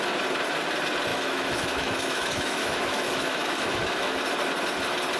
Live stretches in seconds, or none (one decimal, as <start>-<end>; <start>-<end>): 0.0-1.1; 4.2-5.2

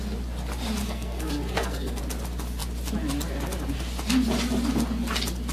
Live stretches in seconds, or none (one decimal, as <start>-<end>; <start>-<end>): 0.0-0.8; 2.0-5.5

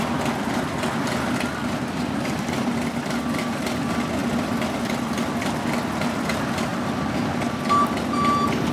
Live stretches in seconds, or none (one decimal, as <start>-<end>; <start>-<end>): 0.0-8.7

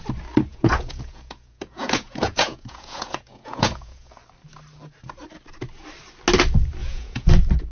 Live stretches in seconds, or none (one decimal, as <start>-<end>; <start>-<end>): 0.0-0.5; 4.1-6.8; 7.3-7.7

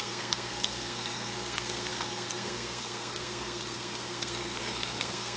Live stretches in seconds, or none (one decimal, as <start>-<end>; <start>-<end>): none